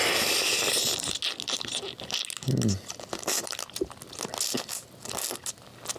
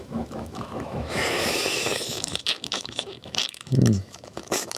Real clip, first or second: first